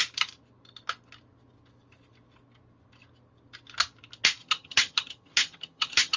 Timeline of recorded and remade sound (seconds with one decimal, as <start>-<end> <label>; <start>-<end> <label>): 0.0-4.4 recorded; 4.4-6.2 remade